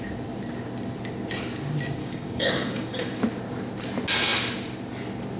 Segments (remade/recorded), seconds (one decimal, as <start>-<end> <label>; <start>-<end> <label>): 0.0-2.0 recorded; 2.0-3.2 remade; 3.2-5.4 recorded